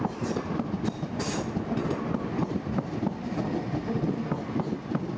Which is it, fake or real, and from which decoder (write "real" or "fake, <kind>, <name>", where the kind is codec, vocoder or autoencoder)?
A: real